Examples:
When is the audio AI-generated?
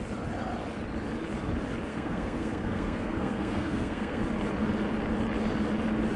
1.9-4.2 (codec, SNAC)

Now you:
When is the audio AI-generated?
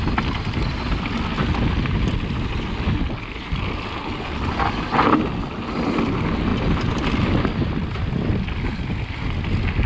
none